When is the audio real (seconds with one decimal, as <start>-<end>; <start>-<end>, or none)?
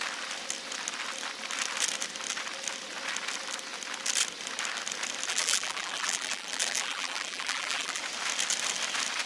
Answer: 0.0-5.3; 8.0-9.3